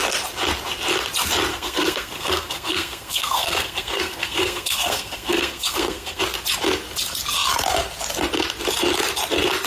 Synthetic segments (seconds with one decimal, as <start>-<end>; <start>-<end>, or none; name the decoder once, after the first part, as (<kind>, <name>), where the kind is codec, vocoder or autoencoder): 1.5-6.2 (codec, SNAC)